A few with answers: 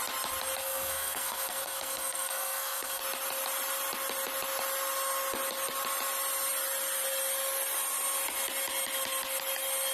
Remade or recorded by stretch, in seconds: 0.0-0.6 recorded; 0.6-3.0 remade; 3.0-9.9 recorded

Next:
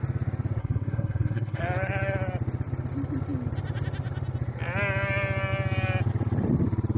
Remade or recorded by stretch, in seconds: 0.0-0.6 recorded; 0.6-1.6 remade; 1.6-7.0 recorded

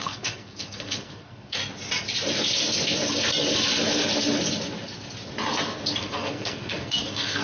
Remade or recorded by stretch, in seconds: 0.0-1.6 remade; 1.6-6.0 recorded; 6.0-7.4 remade

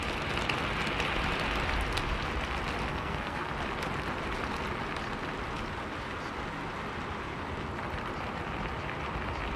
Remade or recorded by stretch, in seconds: 0.0-2.9 recorded; 2.9-3.5 remade; 3.5-9.6 recorded